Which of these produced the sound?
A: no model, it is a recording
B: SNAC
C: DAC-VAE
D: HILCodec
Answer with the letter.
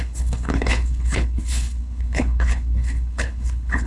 D